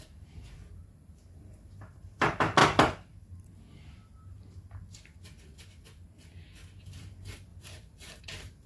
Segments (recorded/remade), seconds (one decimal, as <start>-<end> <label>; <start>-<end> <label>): 0.0-2.6 remade; 2.6-6.8 recorded; 6.8-8.7 remade